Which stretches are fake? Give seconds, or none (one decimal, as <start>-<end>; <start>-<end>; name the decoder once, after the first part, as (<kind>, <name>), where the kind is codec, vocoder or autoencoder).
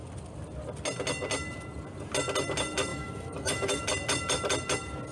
2.9-3.8 (autoencoder, DAC-VAE)